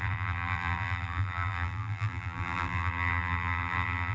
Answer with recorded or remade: remade